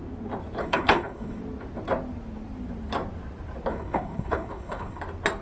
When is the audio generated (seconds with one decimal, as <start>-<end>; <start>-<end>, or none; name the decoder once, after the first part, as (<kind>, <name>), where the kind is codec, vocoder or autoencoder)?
0.6-1.4 (codec, HILCodec); 3.7-5.0